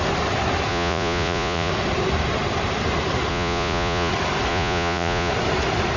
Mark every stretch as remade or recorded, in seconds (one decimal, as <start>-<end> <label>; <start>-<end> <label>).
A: 0.0-0.7 recorded; 0.7-1.7 remade; 1.7-3.3 recorded; 3.3-4.1 remade; 4.1-4.5 recorded; 4.5-5.3 remade; 5.3-6.0 recorded